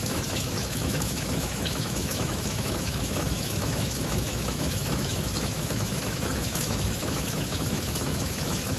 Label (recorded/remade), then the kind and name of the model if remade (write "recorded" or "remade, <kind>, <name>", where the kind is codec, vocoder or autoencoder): remade, autoencoder, DAC-VAE